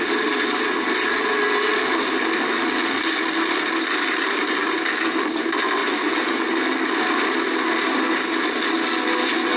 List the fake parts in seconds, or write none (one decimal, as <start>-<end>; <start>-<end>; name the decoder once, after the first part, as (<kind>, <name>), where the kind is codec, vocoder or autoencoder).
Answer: none